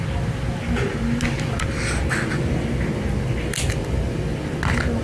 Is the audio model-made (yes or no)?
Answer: no